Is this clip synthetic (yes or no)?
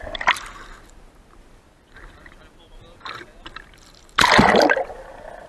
no